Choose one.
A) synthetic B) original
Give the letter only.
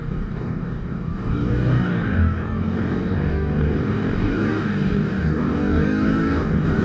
A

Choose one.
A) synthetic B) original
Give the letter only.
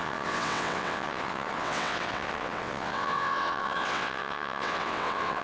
A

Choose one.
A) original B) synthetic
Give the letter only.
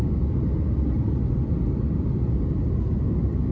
A